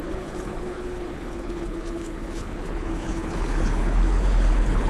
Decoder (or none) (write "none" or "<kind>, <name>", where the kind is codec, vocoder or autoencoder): codec, HILCodec